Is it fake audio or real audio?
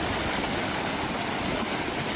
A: real